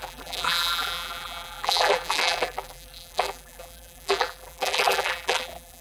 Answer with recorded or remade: remade